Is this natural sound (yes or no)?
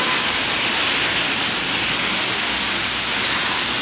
yes